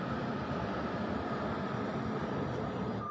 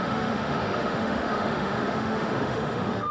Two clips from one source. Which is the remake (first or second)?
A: second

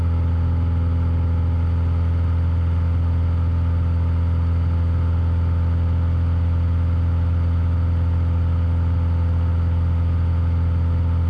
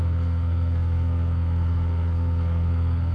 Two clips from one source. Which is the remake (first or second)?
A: second